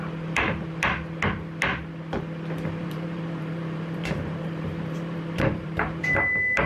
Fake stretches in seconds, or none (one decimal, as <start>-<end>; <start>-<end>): 2.8-6.0